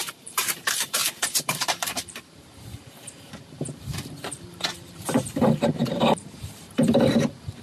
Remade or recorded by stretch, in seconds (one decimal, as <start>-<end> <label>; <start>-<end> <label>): 0.0-7.6 remade